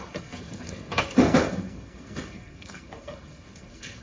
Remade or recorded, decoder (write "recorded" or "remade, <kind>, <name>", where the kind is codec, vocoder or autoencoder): remade, codec, SNAC